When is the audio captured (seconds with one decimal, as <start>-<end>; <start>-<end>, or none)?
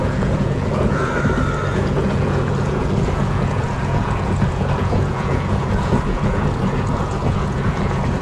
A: 1.1-1.7